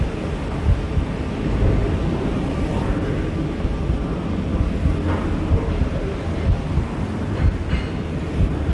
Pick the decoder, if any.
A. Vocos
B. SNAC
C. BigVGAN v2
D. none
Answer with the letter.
D